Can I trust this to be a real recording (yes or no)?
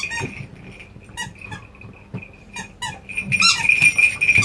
yes